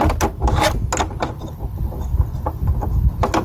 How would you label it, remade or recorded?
recorded